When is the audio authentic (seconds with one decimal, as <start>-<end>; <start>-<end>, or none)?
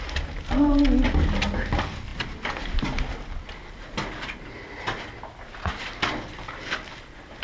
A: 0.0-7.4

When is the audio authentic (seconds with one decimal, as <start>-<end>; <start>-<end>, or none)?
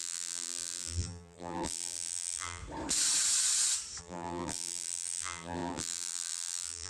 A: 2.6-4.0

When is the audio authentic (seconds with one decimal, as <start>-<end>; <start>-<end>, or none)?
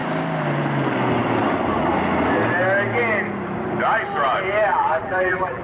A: 0.0-4.7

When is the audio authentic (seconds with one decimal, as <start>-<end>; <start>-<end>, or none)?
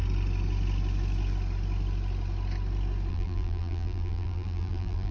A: 0.0-3.1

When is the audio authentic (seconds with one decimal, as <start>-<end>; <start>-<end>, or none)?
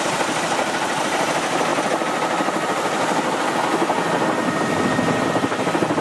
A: 1.7-5.3